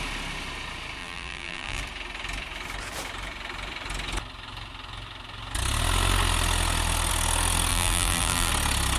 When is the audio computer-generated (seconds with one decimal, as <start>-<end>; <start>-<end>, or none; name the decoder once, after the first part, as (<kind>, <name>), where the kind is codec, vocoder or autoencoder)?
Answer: 1.0-1.8 (vocoder, BigVGAN v2); 7.7-8.5